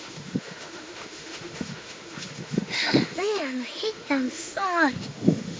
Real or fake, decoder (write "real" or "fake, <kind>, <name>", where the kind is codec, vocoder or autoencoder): fake, autoencoder, DAC-VAE